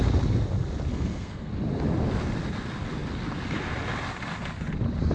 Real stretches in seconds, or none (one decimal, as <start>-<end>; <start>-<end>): 0.0-0.9; 1.5-5.1